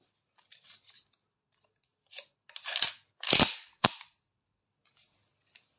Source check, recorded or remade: remade